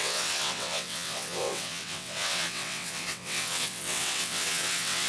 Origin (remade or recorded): remade